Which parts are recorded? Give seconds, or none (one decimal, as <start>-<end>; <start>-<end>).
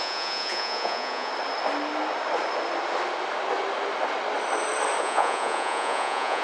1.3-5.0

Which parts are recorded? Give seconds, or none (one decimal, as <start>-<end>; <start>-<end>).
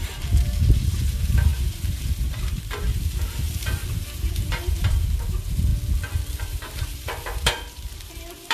5.7-6.4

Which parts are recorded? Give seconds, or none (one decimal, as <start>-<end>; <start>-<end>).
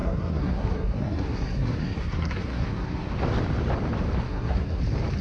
3.1-4.2; 4.8-5.2